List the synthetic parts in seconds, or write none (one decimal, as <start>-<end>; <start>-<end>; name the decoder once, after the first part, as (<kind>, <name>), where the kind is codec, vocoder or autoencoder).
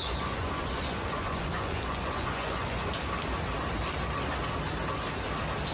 0.0-2.9 (vocoder, Vocos)